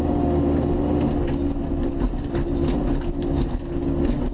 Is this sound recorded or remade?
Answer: recorded